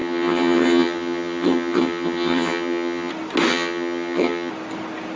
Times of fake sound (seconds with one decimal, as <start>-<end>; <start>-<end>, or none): 0.0-3.1; 3.5-4.5